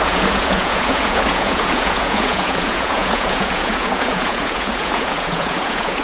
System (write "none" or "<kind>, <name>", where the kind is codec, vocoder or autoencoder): vocoder, Vocos